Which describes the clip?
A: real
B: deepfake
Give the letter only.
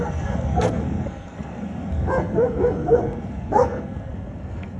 B